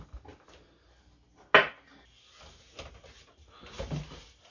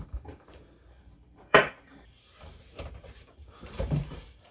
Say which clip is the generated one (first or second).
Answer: second